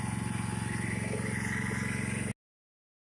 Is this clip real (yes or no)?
yes